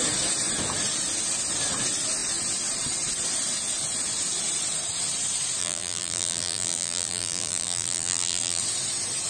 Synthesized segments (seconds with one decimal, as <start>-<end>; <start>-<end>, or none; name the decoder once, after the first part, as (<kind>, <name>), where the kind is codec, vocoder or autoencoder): 5.6-8.6 (vocoder, BigVGAN v2)